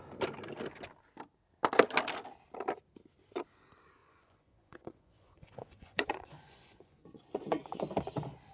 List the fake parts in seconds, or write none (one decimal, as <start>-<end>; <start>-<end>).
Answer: 4.0-7.8

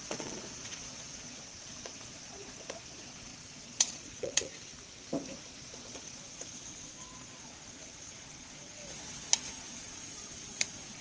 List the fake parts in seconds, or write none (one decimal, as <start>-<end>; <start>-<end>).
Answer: 0.0-4.5; 5.4-8.8; 9.5-11.0